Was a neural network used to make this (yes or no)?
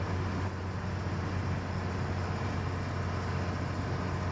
no